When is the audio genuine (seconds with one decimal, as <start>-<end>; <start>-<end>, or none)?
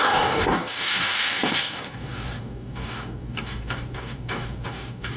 none